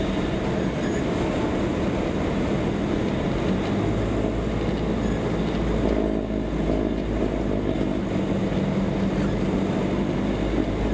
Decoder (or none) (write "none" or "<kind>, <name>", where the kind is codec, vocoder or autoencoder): none